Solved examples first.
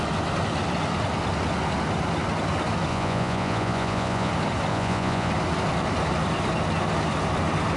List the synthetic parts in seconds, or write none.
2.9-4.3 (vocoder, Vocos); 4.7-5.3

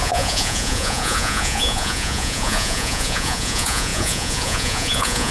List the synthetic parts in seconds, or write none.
0.0-5.3 (vocoder, Vocos)

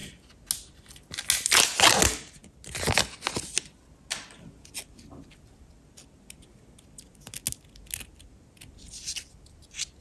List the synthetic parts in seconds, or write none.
none

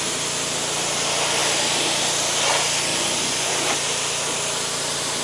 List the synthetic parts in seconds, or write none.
2.9-3.5 (vocoder, Vocos)

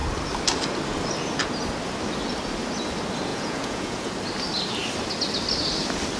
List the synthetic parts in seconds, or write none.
3.3-4.1 (vocoder, Vocos)